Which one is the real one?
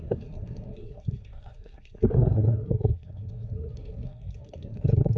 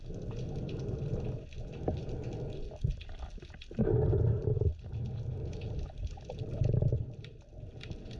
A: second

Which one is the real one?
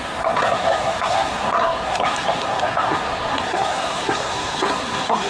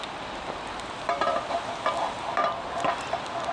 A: second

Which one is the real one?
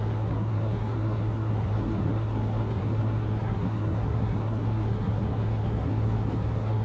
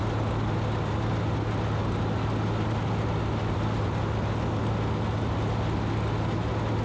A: second